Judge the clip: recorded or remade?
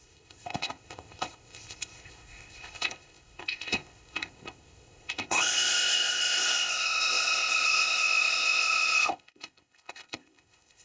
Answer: remade